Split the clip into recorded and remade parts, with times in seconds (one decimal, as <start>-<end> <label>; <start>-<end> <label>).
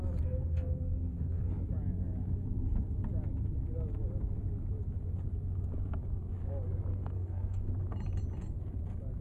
0.0-0.5 recorded; 0.5-1.5 remade; 1.5-6.9 recorded; 6.9-7.7 remade; 7.7-9.2 recorded